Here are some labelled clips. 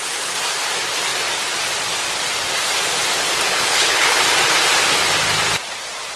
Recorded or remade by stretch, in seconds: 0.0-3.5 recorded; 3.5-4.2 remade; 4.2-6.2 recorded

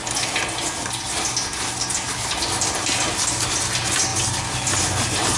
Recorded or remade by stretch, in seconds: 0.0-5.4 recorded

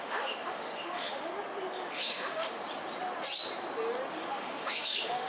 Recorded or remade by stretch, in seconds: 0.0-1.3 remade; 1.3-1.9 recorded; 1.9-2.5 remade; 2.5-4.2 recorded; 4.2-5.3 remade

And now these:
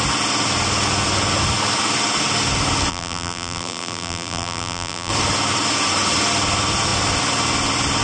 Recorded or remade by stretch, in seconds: 0.0-2.9 recorded; 2.9-5.1 remade; 5.1-8.0 recorded

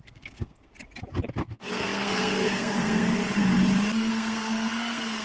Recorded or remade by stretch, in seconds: 0.0-0.7 remade; 0.7-1.4 recorded; 1.4-3.2 remade; 3.2-4.1 recorded; 4.1-5.2 remade